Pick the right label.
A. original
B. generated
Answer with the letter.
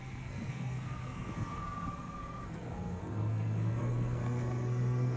B